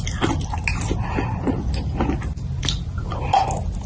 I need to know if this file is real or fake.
real